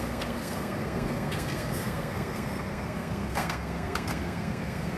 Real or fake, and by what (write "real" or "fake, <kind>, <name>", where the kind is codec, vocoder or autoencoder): fake, codec, SNAC